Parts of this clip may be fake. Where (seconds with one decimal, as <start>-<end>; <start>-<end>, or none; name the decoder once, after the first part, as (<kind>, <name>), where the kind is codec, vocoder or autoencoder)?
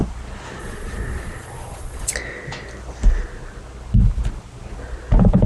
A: 0.6-2.1 (vocoder, Vocos)